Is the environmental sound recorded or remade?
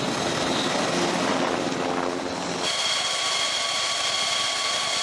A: recorded